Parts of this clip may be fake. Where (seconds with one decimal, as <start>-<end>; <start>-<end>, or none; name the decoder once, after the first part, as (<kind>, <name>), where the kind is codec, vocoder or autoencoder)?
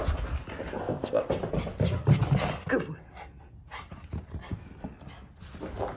0.8-1.3 (codec, ZipCodec)